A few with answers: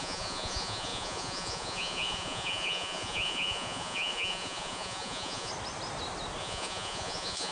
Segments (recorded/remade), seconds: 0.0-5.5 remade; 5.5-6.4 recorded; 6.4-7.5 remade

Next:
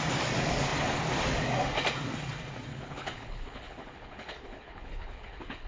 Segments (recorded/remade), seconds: 0.0-2.7 recorded; 2.7-5.7 remade

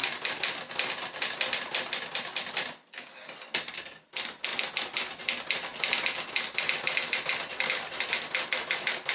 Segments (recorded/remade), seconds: 0.0-9.1 recorded

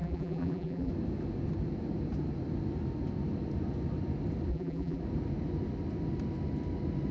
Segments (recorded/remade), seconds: 0.0-0.9 remade; 0.9-4.5 recorded; 4.5-5.0 remade; 5.0-7.1 recorded

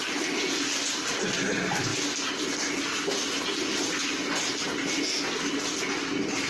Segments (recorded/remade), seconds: 0.0-1.9 remade; 1.9-5.8 recorded; 5.8-6.5 remade

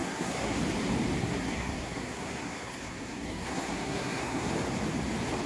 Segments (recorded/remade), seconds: 0.0-0.6 remade; 0.6-1.2 recorded; 1.2-4.5 remade; 4.5-5.5 recorded

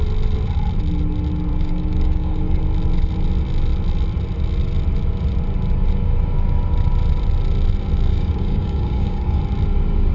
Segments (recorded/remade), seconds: 0.0-1.5 recorded; 1.5-2.6 remade; 2.6-8.1 recorded; 8.1-9.4 remade; 9.4-10.1 recorded